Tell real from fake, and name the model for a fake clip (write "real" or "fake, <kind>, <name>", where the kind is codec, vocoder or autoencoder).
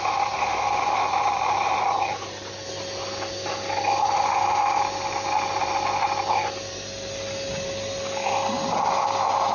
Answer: real